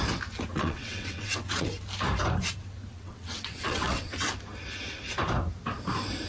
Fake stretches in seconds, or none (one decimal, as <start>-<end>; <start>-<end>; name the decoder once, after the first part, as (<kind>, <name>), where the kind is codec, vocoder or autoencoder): 0.5-1.7 (vocoder, WaveNeXt); 2.9-4.3